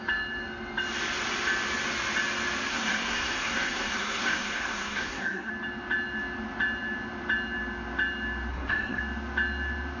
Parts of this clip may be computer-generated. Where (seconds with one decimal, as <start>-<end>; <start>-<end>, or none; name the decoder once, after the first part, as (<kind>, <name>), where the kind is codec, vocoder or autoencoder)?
2.7-5.5 (codec, SNAC); 8.5-9.0